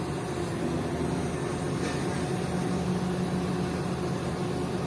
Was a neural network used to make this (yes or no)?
no